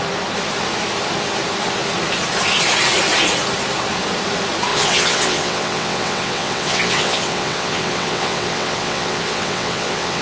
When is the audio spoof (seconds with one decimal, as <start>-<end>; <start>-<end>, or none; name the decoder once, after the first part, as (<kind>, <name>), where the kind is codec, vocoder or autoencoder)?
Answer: 4.7-10.2 (vocoder, WaveNeXt)